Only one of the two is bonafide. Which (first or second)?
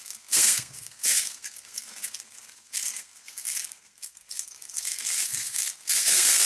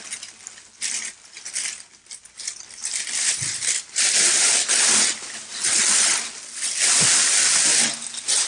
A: second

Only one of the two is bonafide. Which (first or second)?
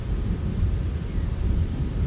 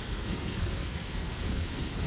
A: first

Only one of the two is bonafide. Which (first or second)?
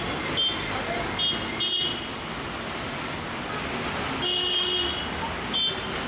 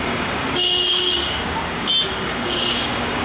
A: first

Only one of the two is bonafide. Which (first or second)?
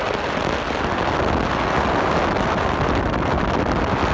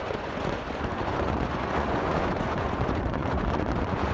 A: first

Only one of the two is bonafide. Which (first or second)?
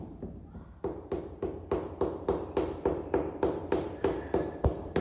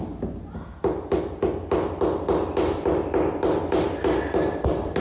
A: second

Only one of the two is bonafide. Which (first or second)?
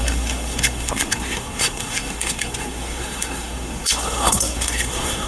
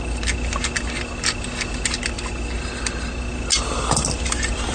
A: second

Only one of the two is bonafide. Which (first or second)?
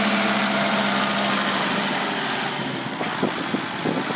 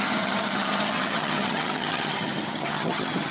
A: first